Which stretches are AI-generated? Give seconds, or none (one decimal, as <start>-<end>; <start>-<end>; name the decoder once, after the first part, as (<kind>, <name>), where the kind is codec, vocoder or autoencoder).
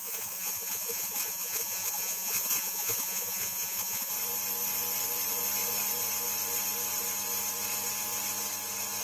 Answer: 0.0-4.1 (vocoder, Vocos)